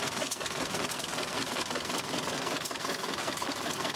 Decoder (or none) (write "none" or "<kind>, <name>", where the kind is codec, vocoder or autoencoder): codec, SNAC